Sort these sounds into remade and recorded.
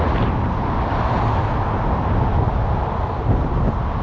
recorded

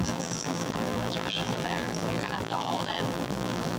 remade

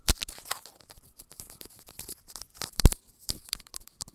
remade